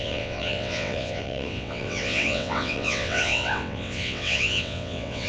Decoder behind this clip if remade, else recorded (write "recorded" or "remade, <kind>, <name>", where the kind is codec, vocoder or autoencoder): remade, vocoder, WaveNeXt